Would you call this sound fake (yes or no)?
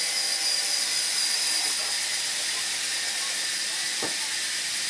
no